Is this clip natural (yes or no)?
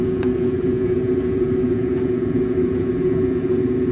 no